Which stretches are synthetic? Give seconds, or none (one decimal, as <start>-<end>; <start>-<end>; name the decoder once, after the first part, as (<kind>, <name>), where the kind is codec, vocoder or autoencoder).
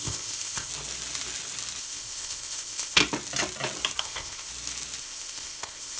0.0-0.7 (codec, ZipCodec); 1.8-3.0; 4.0-4.5; 5.0-6.0